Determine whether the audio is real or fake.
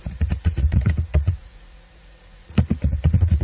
fake